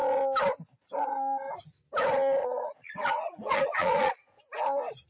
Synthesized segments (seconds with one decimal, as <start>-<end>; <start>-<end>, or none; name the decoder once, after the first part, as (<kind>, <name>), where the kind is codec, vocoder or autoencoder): 2.4-4.4 (vocoder, Vocos)